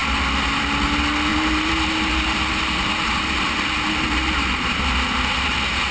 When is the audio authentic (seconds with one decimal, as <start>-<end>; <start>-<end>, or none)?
0.0-1.3; 4.8-5.9